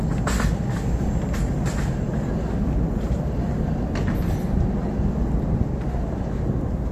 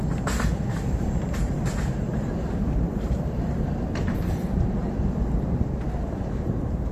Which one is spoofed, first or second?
second